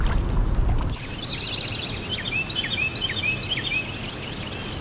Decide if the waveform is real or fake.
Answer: real